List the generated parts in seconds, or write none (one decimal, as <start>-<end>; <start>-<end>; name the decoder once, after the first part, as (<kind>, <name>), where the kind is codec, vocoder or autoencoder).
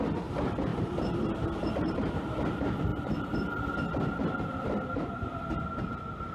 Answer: 0.7-2.4 (vocoder, BigVGAN v2); 2.9-3.5; 3.9-5.6